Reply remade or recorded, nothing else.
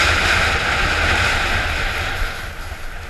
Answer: recorded